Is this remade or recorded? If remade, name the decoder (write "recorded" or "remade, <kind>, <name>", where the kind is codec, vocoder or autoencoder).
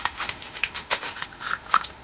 remade, autoencoder, DAC-VAE